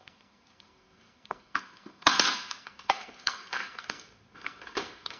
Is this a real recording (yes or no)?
no